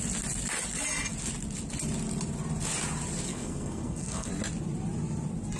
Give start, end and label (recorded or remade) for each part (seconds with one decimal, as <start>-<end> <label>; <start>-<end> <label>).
0.0-3.3 recorded; 3.3-4.3 remade; 4.3-5.6 recorded